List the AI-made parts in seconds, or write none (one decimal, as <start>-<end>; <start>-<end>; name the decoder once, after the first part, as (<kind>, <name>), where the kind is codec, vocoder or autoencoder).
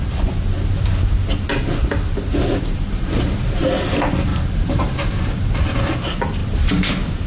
2.5-3.6 (vocoder, BigVGAN v2); 4.3-6.0